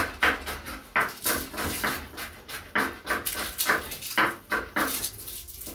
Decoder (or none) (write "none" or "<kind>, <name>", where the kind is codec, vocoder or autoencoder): none